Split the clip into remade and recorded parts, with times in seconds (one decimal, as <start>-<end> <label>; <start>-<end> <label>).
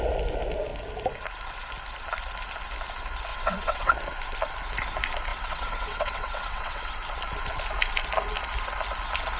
0.0-3.3 recorded; 3.3-3.9 remade; 3.9-5.3 recorded; 5.3-7.0 remade; 7.0-9.4 recorded